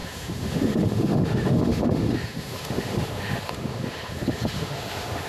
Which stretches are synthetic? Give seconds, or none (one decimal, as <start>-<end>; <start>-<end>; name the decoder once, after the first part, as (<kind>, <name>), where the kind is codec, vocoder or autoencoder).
0.0-5.3 (autoencoder, DAC-VAE)